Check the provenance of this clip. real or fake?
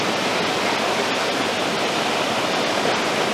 real